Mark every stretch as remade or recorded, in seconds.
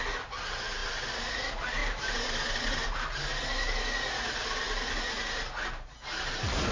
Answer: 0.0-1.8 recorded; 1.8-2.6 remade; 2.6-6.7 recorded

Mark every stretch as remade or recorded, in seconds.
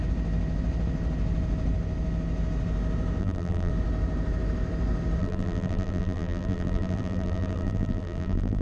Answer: 0.0-3.2 recorded; 3.2-3.7 remade; 3.7-5.2 recorded; 5.2-8.6 remade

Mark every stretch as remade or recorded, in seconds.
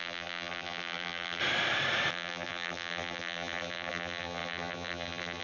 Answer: 0.0-1.4 remade; 1.4-2.1 recorded; 2.1-5.4 remade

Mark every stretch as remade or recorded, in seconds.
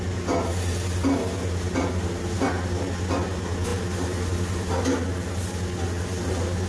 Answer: 0.0-6.7 recorded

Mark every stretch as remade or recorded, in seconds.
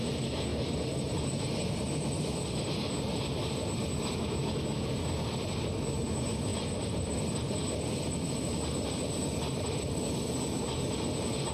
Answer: 0.0-0.5 recorded; 0.5-2.9 remade; 2.9-6.5 recorded; 6.5-10.0 remade; 10.0-11.5 recorded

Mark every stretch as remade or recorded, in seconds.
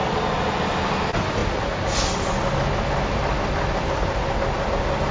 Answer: 0.0-5.1 recorded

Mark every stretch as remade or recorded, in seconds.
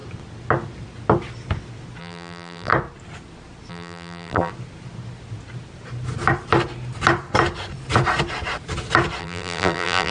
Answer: 0.0-2.0 recorded; 2.0-2.7 remade; 2.7-3.7 recorded; 3.7-4.5 remade; 4.5-9.2 recorded; 9.2-10.1 remade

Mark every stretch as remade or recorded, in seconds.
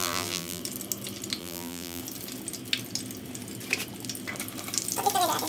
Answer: 0.0-0.6 remade; 0.6-1.4 recorded; 1.4-2.0 remade; 2.0-5.5 recorded